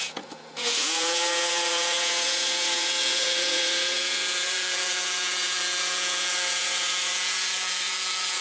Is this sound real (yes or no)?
no